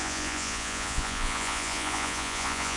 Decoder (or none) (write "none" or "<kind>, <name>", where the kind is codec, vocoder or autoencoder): vocoder, Vocos